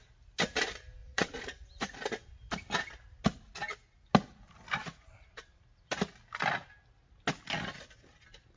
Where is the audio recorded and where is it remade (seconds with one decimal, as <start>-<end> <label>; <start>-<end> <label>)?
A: 0.0-1.0 recorded; 1.0-1.7 remade; 1.7-8.6 recorded